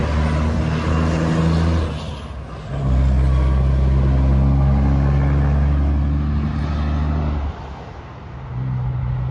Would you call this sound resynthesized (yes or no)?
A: no